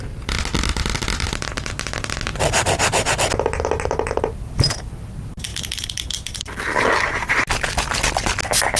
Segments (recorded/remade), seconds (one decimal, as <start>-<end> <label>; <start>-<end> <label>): 0.0-8.8 recorded